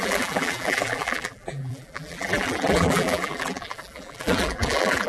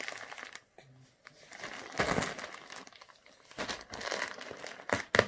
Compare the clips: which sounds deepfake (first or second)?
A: first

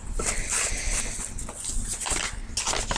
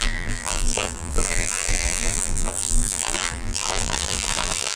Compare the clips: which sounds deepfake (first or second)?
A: second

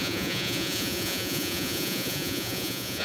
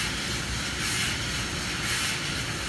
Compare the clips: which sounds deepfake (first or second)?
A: first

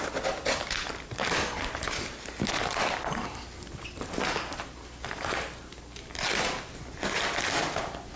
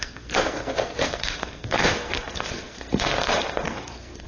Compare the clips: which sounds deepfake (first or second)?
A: second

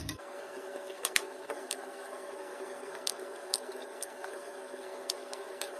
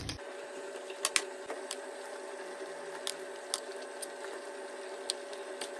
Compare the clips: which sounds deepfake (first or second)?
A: first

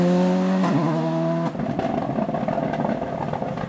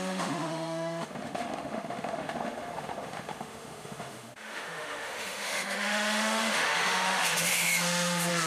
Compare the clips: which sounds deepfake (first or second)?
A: second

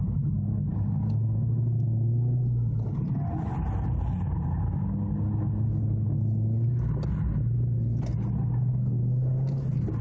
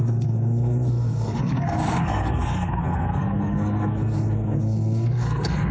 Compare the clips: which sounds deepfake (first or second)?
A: second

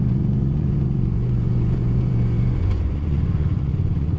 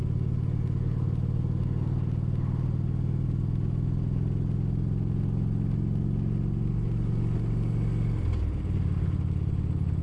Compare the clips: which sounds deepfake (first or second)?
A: first